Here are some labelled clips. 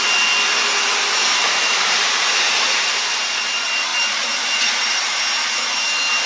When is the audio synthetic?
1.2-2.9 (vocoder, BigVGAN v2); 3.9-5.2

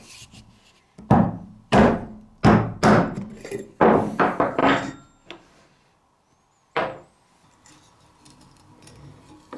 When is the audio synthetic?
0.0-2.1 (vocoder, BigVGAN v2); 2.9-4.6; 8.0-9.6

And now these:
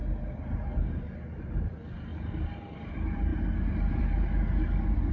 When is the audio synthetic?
2.1-2.9 (vocoder, BigVGAN v2)

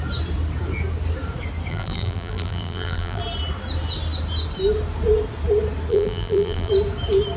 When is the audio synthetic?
1.7-3.2 (vocoder, BigVGAN v2); 5.9-6.7

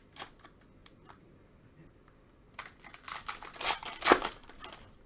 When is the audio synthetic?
0.8-3.9 (vocoder, BigVGAN v2)